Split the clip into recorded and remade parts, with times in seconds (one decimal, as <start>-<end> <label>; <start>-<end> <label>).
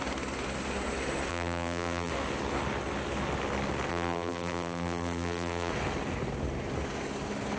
0.0-1.3 recorded; 1.3-2.1 remade; 2.1-3.9 recorded; 3.9-5.7 remade; 5.7-7.6 recorded